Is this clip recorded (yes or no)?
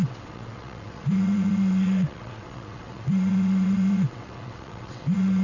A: no